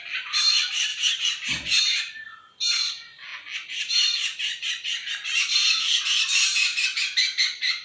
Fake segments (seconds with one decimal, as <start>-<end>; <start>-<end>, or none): none